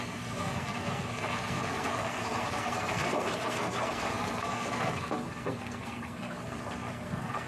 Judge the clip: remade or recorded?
remade